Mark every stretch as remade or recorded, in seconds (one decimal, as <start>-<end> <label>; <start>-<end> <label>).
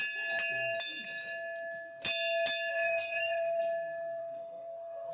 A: 0.0-2.7 recorded; 2.7-3.6 remade; 3.6-4.2 recorded; 4.2-5.1 remade